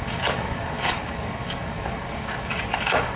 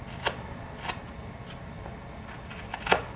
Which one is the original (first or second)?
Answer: second